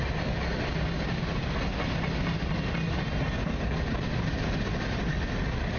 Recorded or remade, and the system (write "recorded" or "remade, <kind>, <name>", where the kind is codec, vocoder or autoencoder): recorded